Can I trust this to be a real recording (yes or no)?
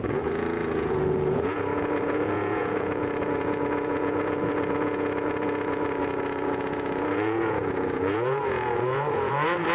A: no